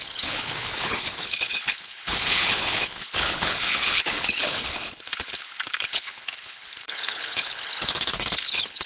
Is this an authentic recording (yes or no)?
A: no